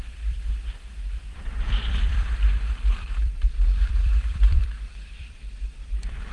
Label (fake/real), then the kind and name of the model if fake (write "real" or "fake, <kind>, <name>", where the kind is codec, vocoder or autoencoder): fake, vocoder, BigVGAN v2